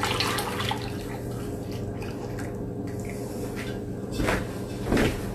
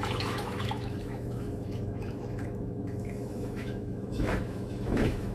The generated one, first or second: second